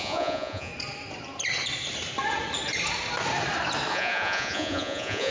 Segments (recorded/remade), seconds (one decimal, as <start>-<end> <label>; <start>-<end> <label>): 0.0-0.7 remade; 0.7-3.9 recorded; 3.9-5.3 remade

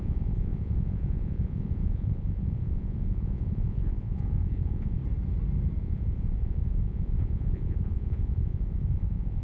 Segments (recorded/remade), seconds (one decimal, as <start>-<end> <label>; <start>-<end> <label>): 0.0-5.0 remade; 5.0-5.8 recorded; 5.8-9.4 remade

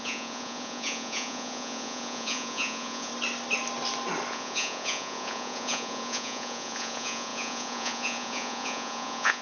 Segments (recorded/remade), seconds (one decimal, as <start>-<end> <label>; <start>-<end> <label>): 0.0-3.1 remade; 3.1-4.3 recorded; 4.3-9.4 remade

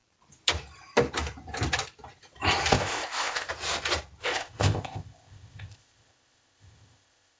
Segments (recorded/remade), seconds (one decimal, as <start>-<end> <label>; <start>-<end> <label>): 0.0-2.7 recorded; 2.7-3.5 remade; 3.5-4.2 recorded; 4.2-7.4 remade